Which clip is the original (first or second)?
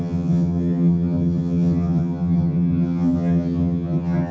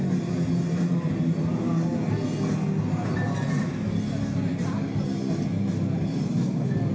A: second